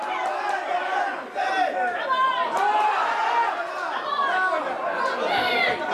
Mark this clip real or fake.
real